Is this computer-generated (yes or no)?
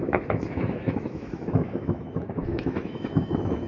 yes